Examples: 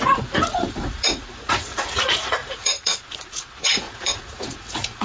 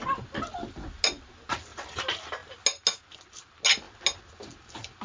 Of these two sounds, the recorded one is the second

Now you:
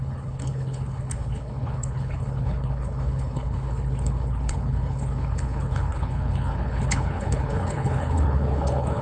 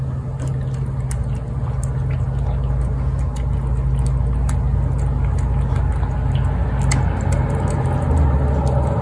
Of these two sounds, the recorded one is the second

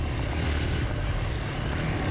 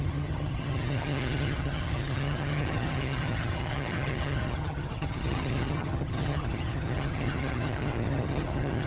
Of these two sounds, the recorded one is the first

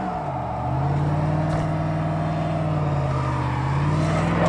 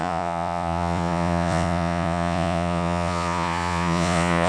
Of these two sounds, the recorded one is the first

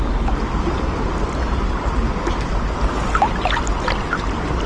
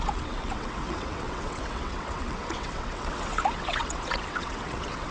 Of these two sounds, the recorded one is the first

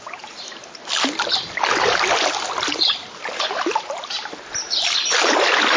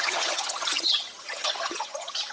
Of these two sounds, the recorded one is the first